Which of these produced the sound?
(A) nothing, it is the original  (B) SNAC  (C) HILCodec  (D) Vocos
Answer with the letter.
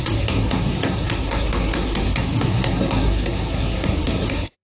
B